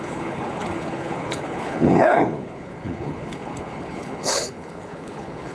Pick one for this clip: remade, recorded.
remade